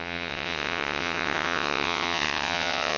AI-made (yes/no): yes